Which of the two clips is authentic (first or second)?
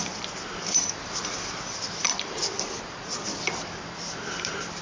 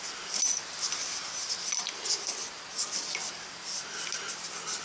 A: second